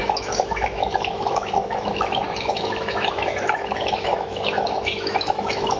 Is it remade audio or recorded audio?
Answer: remade